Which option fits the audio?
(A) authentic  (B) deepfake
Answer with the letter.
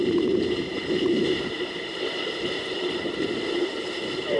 B